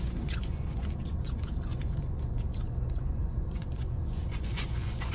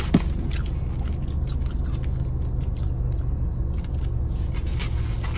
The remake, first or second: first